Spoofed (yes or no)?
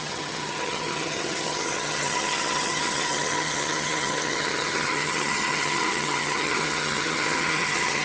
yes